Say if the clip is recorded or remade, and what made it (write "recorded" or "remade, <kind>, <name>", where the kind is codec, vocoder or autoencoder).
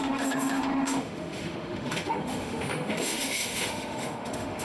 remade, autoencoder, DAC-VAE